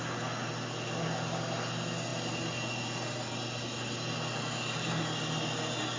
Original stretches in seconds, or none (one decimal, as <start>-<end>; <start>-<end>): 0.0-6.0